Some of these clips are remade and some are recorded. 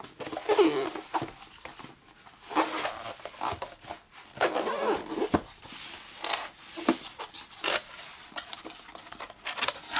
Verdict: recorded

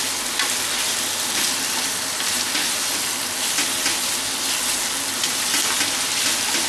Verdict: recorded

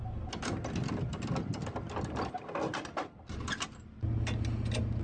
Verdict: recorded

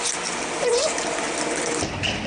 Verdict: recorded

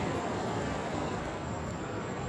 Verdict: remade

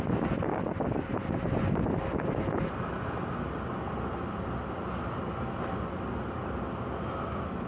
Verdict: recorded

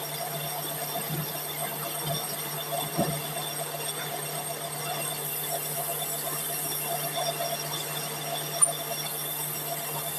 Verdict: recorded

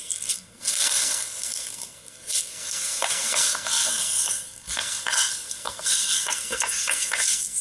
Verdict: remade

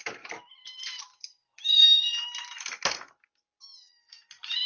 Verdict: recorded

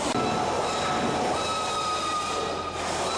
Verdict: recorded